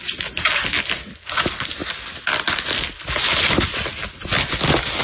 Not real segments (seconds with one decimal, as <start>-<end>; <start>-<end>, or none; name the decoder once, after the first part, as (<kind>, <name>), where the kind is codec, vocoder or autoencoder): none